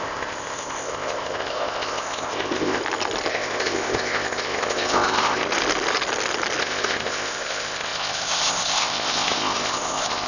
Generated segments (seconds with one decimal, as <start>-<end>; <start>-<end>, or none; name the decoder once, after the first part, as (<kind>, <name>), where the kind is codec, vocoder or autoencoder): 0.0-2.8 (codec, ZipCodec); 3.3-5.4; 6.6-10.3